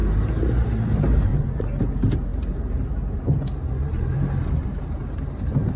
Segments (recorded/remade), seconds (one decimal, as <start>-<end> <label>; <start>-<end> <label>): 0.0-0.8 recorded; 0.8-1.3 remade; 1.3-1.8 recorded; 1.8-4.4 remade; 4.4-5.0 recorded; 5.0-5.8 remade

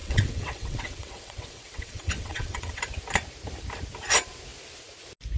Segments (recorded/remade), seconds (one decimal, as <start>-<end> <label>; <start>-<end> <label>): 0.0-2.8 remade; 2.8-5.4 recorded

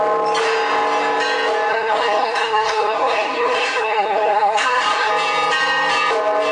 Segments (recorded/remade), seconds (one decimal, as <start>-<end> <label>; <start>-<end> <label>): 0.0-1.7 recorded; 1.7-5.1 remade; 5.1-6.5 recorded

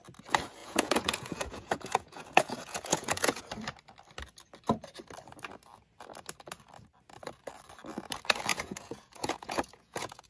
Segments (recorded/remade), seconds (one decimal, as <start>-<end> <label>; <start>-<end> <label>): 0.0-0.6 recorded; 0.6-3.4 remade; 3.4-8.5 recorded; 8.5-10.3 remade

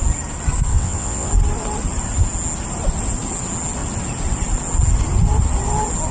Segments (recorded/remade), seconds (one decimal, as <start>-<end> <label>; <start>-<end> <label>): 0.0-0.7 recorded; 0.7-1.3 remade; 1.3-6.1 recorded